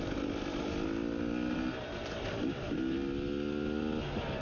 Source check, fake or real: real